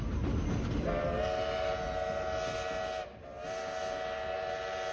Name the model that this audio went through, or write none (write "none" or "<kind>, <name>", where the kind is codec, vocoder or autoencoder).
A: none